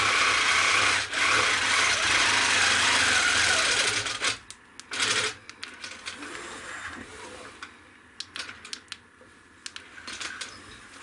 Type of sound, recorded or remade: recorded